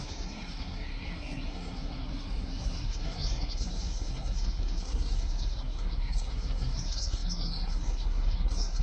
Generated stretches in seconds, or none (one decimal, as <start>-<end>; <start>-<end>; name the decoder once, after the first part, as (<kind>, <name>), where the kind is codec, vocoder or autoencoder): 0.0-8.8 (codec, SNAC)